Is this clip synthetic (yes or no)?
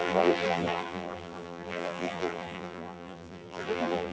yes